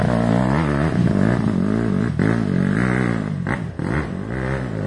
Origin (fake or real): real